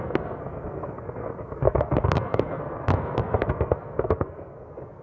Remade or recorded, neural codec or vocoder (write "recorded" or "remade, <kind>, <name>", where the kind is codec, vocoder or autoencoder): remade, codec, SNAC